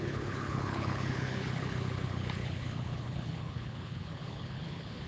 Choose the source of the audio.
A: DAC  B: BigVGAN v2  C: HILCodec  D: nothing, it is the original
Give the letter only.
C